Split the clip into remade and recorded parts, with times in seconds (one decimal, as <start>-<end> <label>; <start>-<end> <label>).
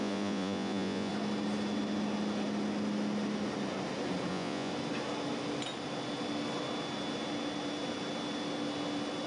0.0-1.1 remade; 1.1-4.3 recorded; 4.3-4.7 remade; 4.7-9.3 recorded